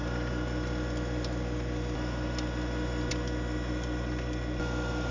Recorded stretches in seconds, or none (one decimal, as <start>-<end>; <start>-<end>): 0.0-5.1